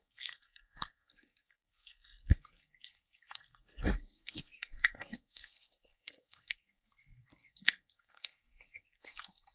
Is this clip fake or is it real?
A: fake